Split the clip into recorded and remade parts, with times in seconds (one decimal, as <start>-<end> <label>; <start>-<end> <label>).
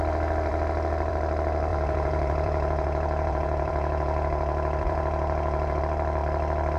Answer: 0.0-1.7 recorded; 1.7-5.8 remade; 5.8-6.8 recorded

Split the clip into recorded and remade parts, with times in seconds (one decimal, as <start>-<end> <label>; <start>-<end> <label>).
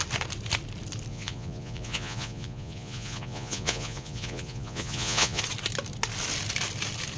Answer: 0.0-1.1 recorded; 1.1-5.4 remade; 5.4-7.2 recorded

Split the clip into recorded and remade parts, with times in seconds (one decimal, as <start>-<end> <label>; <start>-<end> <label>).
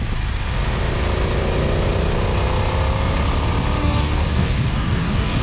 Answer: 0.0-3.8 recorded; 3.8-5.4 remade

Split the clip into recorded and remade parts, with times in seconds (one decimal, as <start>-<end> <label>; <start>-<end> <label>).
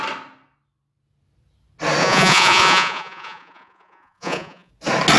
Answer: 0.0-2.0 recorded; 2.0-4.7 remade; 4.7-5.2 recorded